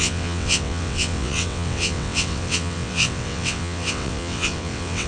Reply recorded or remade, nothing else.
remade